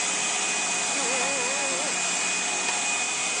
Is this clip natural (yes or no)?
yes